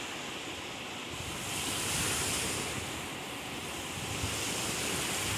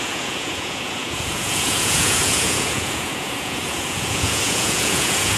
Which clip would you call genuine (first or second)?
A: first